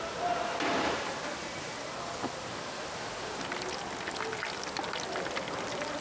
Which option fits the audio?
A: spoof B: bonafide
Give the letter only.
B